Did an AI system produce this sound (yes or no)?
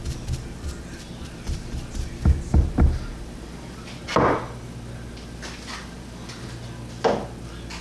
no